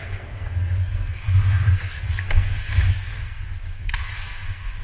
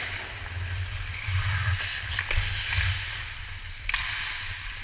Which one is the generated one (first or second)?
first